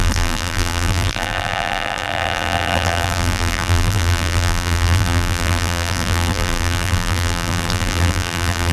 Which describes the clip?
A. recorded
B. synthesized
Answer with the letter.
B